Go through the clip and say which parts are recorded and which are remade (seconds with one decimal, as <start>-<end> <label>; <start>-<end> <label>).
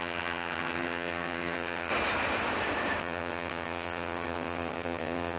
0.0-1.9 remade; 1.9-3.0 recorded; 3.0-5.4 remade